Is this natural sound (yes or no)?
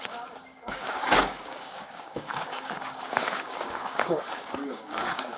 no